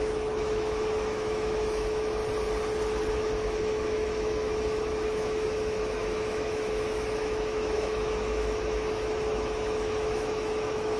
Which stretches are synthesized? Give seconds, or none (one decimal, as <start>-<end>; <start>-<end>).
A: 0.0-2.2; 3.1-11.0